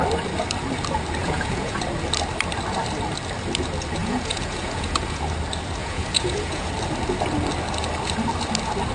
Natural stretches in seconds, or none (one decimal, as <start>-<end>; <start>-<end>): 0.0-1.2; 1.8-4.0; 5.2-5.8; 6.7-8.9

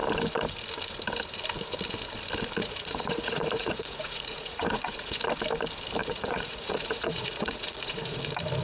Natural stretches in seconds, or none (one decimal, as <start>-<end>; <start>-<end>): 0.0-2.6; 5.2-6.0; 8.2-8.6

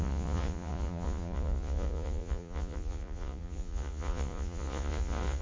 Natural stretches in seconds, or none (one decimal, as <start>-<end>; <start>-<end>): none

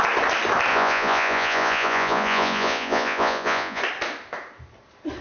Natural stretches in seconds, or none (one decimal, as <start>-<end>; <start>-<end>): 0.0-0.7; 3.8-5.2

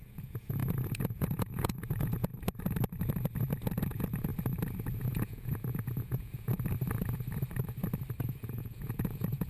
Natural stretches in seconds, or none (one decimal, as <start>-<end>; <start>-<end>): 2.3-3.8; 4.3-5.0; 6.5-8.2

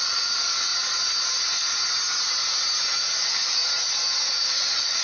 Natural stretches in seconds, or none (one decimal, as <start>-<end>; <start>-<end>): 0.7-2.9; 3.6-4.3

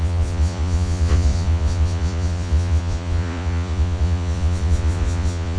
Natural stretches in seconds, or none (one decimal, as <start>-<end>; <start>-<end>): none